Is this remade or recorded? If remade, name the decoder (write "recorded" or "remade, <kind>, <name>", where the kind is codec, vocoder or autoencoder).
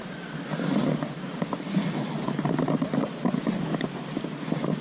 recorded